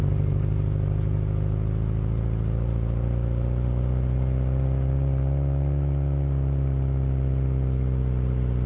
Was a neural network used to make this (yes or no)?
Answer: no